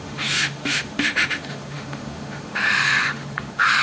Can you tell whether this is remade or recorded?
remade